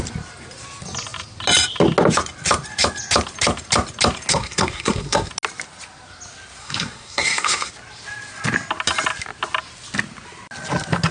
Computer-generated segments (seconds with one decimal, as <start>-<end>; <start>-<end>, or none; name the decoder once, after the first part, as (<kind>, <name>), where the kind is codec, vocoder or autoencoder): 4.3-5.3 (codec, SNAC); 6.6-7.7